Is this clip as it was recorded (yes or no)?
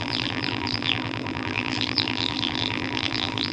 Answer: no